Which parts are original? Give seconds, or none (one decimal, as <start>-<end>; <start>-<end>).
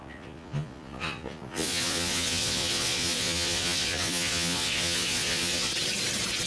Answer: 5.7-6.5